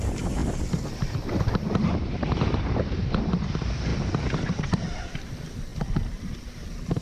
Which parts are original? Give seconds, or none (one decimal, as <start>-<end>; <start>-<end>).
0.4-1.5; 3.9-4.5